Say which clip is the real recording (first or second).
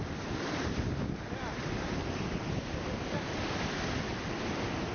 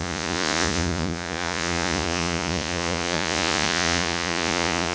first